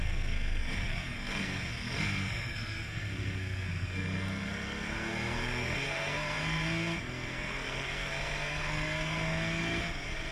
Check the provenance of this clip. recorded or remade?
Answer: remade